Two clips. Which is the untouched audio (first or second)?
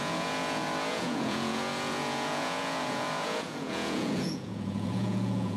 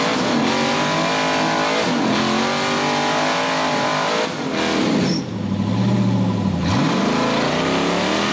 second